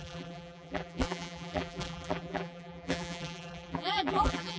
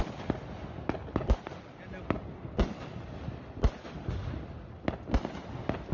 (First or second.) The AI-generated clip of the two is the first